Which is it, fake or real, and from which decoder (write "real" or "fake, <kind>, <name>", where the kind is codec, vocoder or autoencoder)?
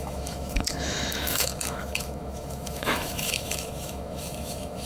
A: fake, autoencoder, DAC-VAE